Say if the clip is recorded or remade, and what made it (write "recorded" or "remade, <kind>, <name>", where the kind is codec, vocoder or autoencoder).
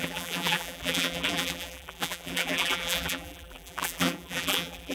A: remade, vocoder, BigVGAN v2